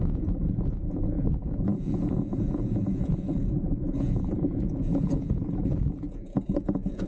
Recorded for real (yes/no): no